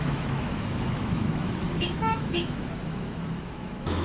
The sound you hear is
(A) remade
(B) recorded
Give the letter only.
A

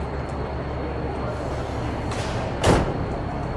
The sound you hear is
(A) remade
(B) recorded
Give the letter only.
B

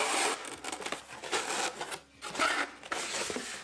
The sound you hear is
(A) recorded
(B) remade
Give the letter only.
A